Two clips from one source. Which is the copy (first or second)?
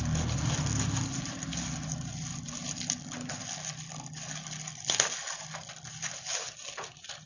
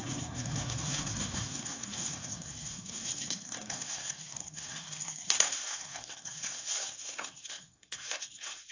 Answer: second